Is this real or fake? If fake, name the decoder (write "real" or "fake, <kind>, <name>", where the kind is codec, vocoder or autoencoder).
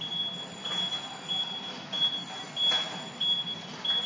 real